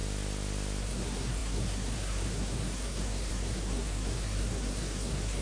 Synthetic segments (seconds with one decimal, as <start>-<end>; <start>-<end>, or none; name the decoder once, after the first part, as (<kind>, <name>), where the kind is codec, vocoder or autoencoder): 0.8-5.4 (codec, SNAC)